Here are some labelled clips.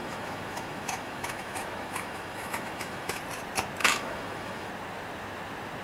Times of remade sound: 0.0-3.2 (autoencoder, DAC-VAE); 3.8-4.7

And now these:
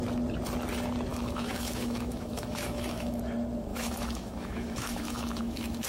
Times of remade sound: 1.1-3.2 (autoencoder, DAC-VAE); 3.7-5.9

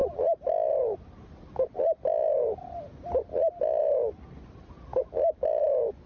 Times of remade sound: 4.9-5.6 (autoencoder, DAC-VAE)

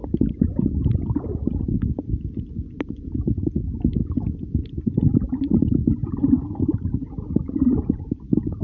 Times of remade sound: none

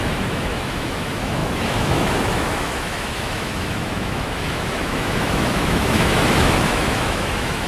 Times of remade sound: 0.0-7.7 (autoencoder, DAC-VAE)

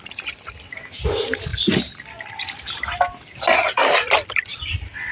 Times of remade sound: none

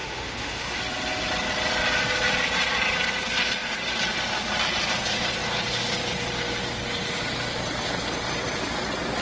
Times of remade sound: 0.0-0.8 (autoencoder, DAC-VAE)